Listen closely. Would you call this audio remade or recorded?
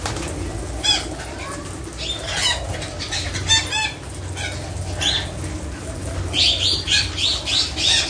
recorded